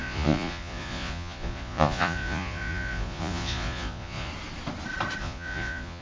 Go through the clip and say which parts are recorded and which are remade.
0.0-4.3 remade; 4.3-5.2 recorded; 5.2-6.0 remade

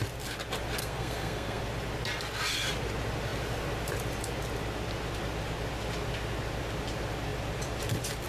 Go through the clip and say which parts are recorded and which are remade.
0.0-0.8 recorded; 0.8-1.6 remade; 1.6-8.3 recorded

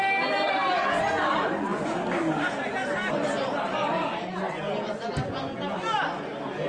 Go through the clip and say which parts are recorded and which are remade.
0.0-6.7 recorded

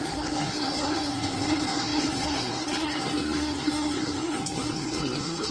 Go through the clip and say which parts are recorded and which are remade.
0.0-5.5 remade

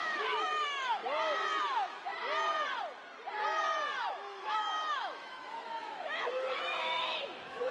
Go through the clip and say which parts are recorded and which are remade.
0.0-1.0 remade; 1.0-1.6 recorded; 1.6-2.1 remade; 2.1-4.1 recorded; 4.1-7.7 remade

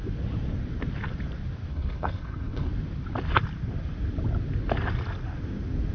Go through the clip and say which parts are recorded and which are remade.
0.0-1.7 recorded; 1.7-2.7 remade; 2.7-5.9 recorded

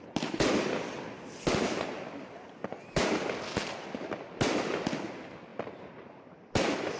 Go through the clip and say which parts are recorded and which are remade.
0.0-7.0 recorded

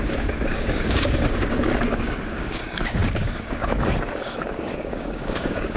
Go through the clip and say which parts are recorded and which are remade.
0.0-5.8 remade